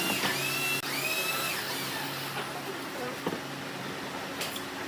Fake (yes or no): no